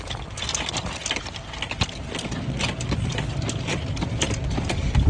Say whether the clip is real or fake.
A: real